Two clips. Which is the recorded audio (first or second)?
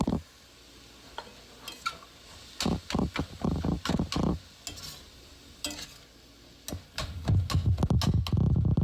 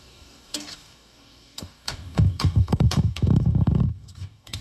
first